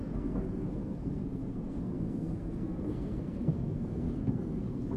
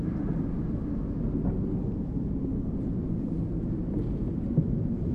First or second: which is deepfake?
first